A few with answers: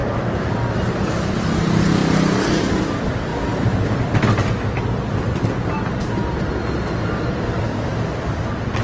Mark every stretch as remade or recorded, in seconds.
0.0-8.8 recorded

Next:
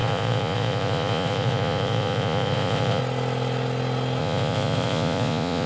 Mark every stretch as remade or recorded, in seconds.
0.0-3.0 remade; 3.0-4.2 recorded; 4.2-5.7 remade

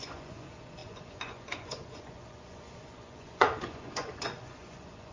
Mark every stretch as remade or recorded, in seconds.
0.0-5.1 remade